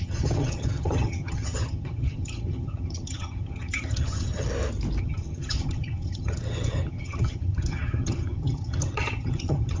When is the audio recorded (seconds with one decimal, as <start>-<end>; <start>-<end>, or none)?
4.5-5.0